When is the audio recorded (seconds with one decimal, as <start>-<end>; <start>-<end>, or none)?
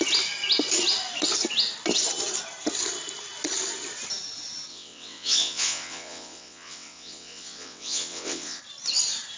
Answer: 0.0-4.7; 8.6-9.4